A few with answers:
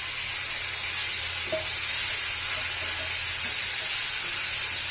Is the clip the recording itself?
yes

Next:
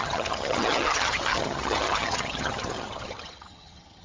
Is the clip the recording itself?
no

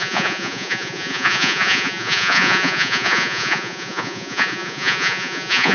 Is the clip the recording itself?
no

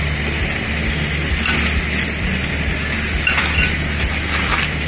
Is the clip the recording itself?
yes